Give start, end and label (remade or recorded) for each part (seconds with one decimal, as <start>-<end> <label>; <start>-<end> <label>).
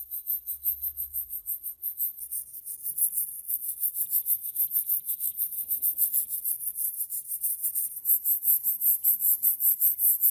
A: 0.0-5.3 recorded; 5.3-5.9 remade; 5.9-6.8 recorded; 6.8-7.7 remade; 7.7-10.3 recorded